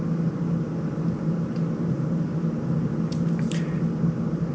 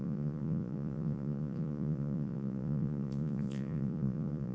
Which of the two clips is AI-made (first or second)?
second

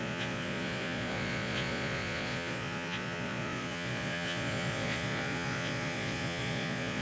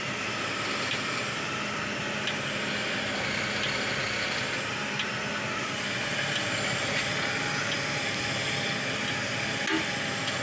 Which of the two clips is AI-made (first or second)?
first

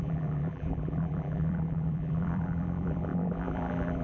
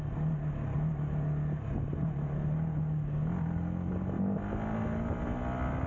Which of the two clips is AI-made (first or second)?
first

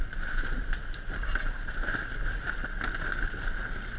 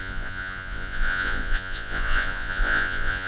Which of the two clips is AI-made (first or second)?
second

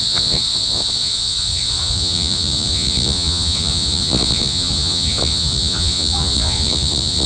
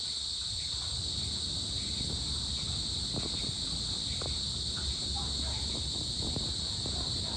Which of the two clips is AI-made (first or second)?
first